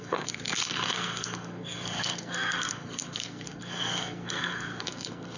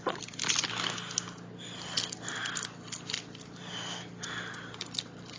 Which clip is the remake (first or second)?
first